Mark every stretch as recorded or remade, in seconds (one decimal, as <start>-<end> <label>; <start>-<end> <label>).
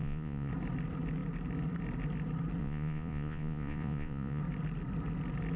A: 0.0-0.5 remade; 0.5-2.6 recorded; 2.6-4.4 remade; 4.4-5.6 recorded